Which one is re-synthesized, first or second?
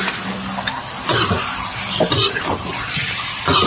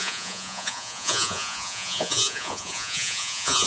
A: second